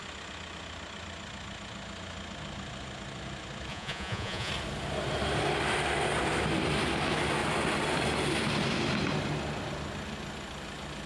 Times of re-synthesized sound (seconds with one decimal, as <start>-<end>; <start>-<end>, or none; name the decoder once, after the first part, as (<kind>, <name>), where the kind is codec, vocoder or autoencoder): 3.7-4.5 (vocoder, Vocos)